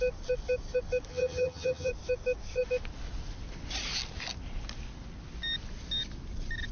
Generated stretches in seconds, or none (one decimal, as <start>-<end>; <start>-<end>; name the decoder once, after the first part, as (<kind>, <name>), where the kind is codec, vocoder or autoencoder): 1.1-1.9 (vocoder, HiFi-GAN)